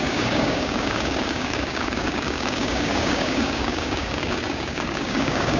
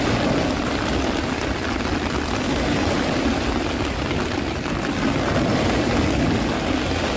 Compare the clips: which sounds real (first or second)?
second